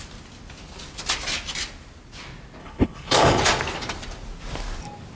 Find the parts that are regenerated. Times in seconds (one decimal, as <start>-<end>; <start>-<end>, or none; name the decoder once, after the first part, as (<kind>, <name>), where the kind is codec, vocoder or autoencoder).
2.6-3.4 (codec, HILCodec)

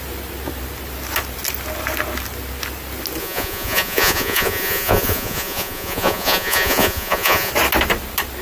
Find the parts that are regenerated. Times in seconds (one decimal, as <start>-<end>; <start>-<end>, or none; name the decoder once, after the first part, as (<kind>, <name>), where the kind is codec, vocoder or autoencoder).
3.2-7.5 (vocoder, Vocos)

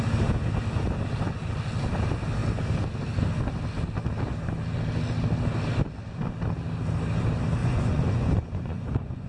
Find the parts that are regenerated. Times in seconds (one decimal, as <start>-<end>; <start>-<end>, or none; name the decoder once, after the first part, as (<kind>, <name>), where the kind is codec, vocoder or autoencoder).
7.6-9.3 (vocoder, Vocos)

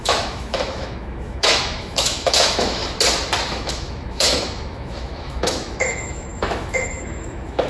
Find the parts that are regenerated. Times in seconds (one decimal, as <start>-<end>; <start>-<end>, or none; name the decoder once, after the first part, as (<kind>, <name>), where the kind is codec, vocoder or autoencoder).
0.0-2.8 (autoencoder, DAC-VAE); 3.5-7.7

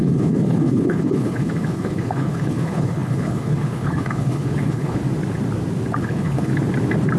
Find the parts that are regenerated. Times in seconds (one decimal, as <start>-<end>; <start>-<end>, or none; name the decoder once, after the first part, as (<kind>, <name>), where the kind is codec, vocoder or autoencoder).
0.0-5.0 (codec, HILCodec); 6.0-6.5

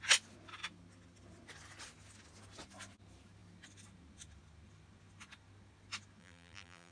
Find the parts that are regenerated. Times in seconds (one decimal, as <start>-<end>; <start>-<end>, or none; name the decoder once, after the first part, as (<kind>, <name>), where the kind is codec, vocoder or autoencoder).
6.2-6.9 (vocoder, BigVGAN v2)

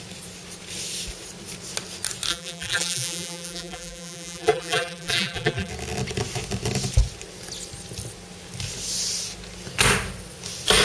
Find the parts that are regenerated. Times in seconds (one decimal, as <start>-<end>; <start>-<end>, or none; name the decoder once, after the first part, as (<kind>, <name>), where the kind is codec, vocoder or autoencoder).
2.3-5.7 (vocoder, BigVGAN v2)

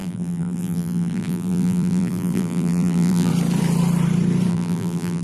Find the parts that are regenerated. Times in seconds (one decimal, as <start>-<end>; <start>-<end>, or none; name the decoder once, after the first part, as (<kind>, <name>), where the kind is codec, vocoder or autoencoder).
0.0-3.3 (vocoder, BigVGAN v2); 4.5-5.2